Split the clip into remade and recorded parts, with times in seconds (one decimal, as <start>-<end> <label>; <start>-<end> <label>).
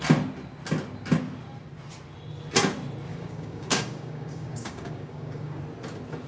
0.0-3.1 recorded; 3.1-5.6 remade; 5.6-6.3 recorded